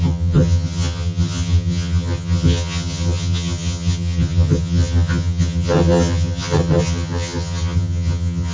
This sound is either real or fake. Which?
fake